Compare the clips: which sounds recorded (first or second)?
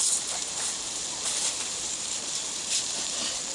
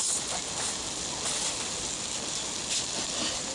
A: second